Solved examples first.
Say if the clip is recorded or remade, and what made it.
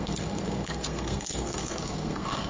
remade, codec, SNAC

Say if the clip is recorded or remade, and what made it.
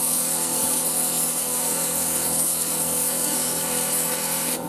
remade, codec, SNAC